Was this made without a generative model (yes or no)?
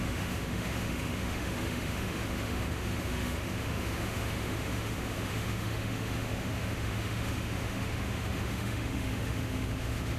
no